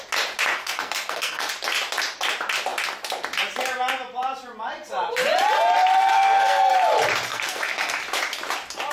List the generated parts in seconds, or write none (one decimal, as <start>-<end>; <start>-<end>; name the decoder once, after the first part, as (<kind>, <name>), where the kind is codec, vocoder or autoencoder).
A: 0.5-1.5 (codec, SNAC); 6.1-6.7; 7.3-8.0